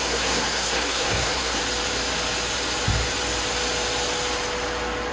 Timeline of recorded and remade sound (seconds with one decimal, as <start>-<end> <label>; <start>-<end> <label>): 0.0-1.6 remade; 1.6-5.1 recorded